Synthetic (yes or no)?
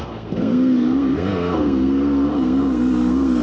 yes